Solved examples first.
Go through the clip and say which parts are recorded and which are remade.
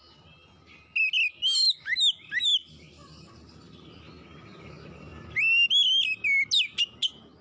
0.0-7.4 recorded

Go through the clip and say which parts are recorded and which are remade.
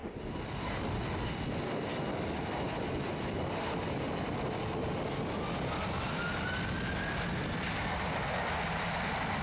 0.0-9.4 recorded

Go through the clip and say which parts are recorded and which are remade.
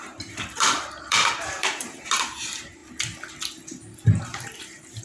0.0-2.8 remade; 2.8-4.2 recorded; 4.2-5.0 remade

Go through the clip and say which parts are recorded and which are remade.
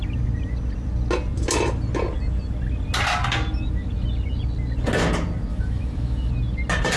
0.0-5.5 recorded; 5.5-6.3 remade; 6.3-7.0 recorded